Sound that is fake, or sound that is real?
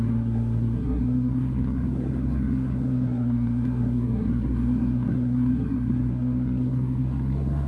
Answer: fake